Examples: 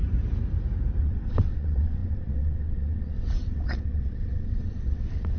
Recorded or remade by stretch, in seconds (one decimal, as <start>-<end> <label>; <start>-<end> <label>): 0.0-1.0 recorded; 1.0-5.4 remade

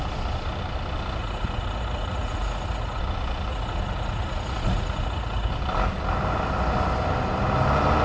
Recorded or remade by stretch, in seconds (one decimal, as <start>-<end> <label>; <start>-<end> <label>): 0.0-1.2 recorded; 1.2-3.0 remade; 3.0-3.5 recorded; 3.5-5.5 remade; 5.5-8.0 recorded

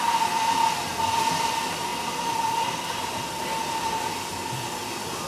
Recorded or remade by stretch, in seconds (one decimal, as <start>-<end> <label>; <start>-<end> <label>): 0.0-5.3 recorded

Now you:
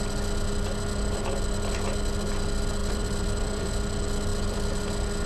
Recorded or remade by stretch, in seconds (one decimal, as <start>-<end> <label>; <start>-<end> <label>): 0.0-2.8 recorded; 2.8-3.7 remade; 3.7-4.3 recorded; 4.3-4.8 remade; 4.8-5.3 recorded

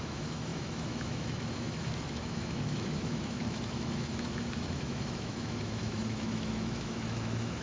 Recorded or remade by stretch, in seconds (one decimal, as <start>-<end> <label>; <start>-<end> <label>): 0.0-7.6 remade

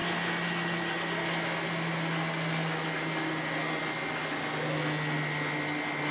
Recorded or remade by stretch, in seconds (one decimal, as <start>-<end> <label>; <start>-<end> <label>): 0.0-6.1 recorded

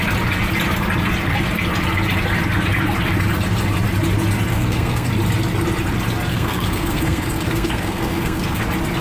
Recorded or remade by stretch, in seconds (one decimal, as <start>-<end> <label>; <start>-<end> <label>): 0.0-4.5 recorded; 4.5-5.1 remade; 5.1-6.3 recorded; 6.3-8.6 remade; 8.6-9.0 recorded

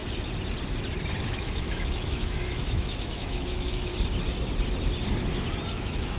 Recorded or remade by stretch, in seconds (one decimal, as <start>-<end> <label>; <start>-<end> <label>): 0.0-1.2 recorded; 1.2-3.9 remade; 3.9-5.7 recorded; 5.7-6.2 remade